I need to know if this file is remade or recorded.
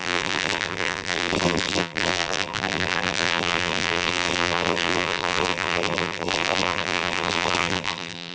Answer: remade